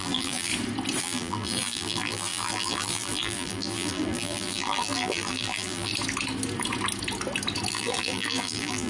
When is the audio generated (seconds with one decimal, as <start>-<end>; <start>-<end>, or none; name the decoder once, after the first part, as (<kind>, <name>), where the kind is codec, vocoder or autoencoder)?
0.0-0.5 (vocoder, BigVGAN v2); 1.0-5.9; 7.7-8.9

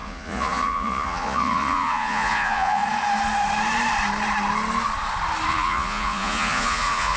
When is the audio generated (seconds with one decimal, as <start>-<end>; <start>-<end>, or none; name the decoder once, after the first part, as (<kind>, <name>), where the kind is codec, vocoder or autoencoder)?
0.0-2.8 (vocoder, Vocos); 5.5-7.2

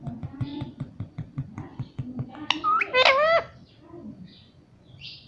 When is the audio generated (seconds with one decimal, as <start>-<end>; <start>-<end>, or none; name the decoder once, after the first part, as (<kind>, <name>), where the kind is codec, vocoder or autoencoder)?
0.0-1.7 (vocoder, Vocos); 4.1-5.3

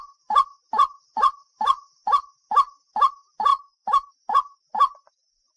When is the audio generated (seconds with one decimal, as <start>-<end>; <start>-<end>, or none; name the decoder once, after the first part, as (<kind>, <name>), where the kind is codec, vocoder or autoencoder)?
3.5-4.1 (autoencoder, DAC-VAE)

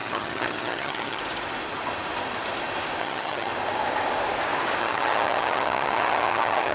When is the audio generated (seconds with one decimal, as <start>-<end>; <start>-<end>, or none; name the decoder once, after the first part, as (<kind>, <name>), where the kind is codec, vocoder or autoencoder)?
0.0-1.2 (vocoder, HiFi-GAN); 3.0-3.5; 4.8-6.7